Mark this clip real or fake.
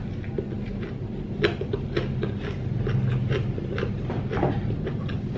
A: real